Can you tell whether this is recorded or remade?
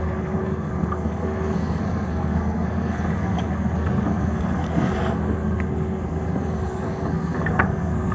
remade